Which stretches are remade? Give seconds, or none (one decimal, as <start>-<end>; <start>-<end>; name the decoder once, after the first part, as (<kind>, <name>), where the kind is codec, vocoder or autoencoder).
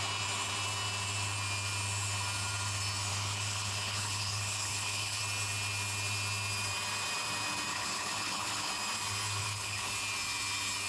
3.1-5.2 (codec, HILCodec); 7.7-8.7; 9.4-9.9